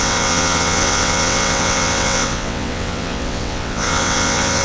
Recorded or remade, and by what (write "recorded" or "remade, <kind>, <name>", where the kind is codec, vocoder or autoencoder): remade, vocoder, WaveNeXt